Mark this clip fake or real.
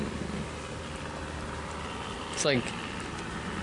real